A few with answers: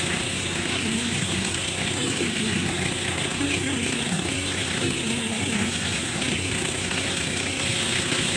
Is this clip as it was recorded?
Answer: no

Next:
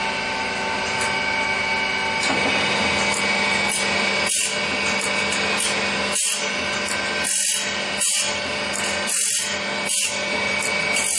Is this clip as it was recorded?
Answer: yes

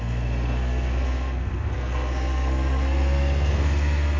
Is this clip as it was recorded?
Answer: no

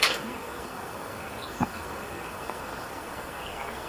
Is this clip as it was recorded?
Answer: no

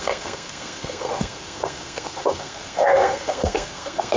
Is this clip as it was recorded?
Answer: no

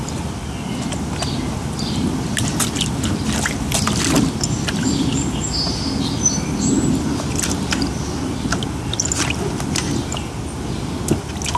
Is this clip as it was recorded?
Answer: yes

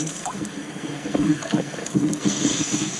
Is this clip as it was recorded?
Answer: no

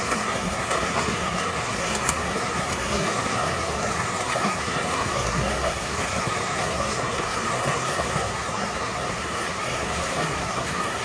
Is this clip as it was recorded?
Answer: no